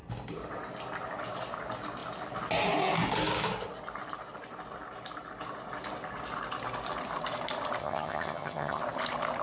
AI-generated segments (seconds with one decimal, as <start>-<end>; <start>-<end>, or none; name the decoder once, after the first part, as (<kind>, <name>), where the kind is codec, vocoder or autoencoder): 7.8-8.8 (vocoder, HiFi-GAN)